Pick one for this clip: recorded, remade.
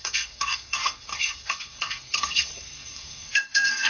remade